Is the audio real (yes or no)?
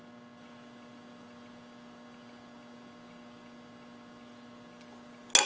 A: yes